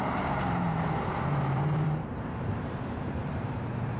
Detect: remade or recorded remade